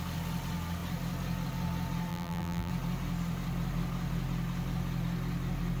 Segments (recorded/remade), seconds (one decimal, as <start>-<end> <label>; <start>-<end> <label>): 0.0-2.1 recorded; 2.1-2.7 remade; 2.7-5.8 recorded